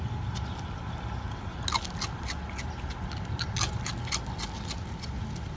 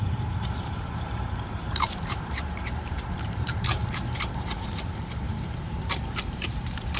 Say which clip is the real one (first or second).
first